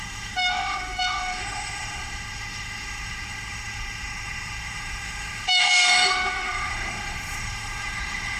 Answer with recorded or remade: remade